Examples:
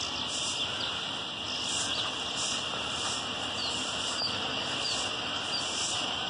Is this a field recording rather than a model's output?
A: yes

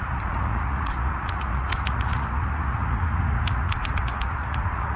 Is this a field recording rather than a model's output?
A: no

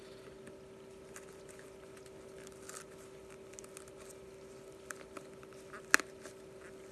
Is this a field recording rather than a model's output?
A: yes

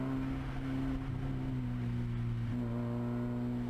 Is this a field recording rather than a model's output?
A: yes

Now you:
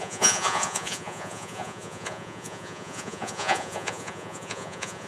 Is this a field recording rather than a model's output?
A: no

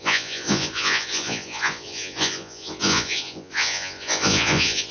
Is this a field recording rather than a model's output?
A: no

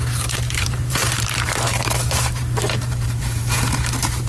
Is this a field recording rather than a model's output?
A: no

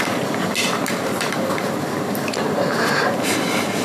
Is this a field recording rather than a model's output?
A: yes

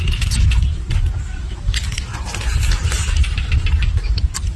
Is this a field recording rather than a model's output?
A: yes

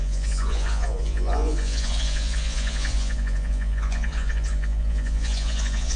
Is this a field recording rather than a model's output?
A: no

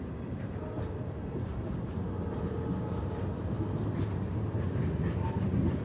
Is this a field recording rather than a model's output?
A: no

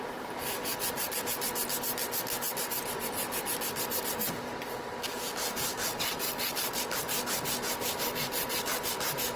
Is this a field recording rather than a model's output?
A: yes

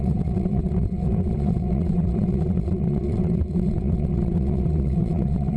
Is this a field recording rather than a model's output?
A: no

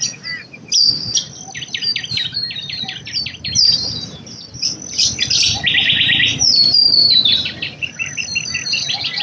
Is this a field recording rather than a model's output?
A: no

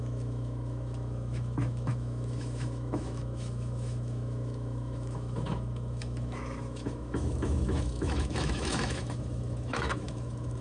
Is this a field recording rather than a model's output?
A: no